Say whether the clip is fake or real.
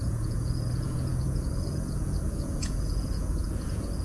fake